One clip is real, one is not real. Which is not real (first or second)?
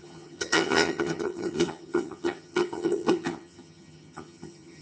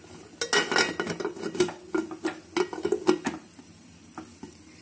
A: first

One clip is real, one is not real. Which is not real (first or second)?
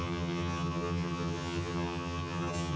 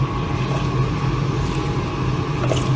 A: first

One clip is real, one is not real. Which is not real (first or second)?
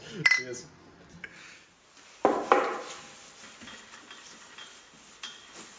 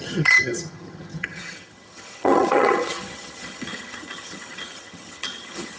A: second